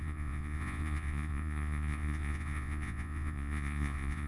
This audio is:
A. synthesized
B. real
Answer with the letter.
A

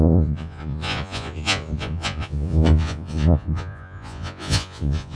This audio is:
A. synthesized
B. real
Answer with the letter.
A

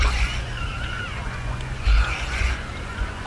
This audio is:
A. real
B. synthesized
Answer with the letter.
B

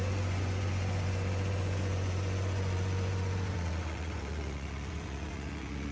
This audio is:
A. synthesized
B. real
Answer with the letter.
A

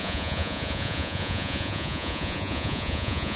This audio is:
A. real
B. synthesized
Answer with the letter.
B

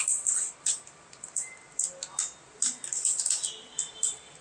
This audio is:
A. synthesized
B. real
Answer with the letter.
B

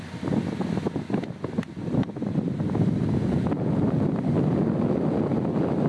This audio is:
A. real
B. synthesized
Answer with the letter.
A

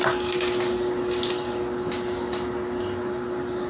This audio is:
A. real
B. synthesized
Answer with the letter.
A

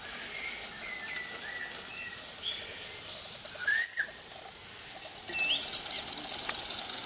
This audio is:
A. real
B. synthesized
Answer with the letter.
A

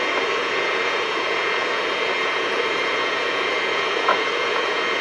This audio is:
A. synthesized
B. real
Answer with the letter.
A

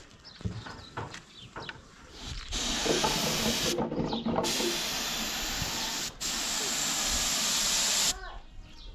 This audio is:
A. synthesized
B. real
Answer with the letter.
B